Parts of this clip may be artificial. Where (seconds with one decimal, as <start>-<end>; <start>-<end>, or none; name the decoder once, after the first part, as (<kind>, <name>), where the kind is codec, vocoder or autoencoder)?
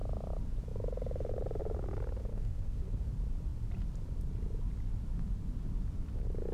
2.2-3.1 (codec, SNAC)